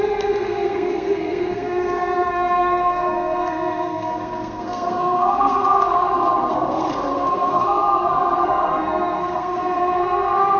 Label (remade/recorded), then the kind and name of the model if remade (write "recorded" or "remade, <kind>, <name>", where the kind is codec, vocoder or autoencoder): remade, codec, SNAC